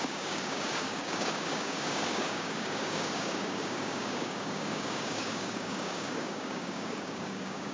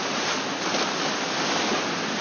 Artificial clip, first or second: first